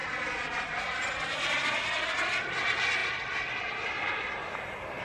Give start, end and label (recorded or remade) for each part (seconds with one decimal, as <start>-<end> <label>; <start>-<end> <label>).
0.0-5.0 recorded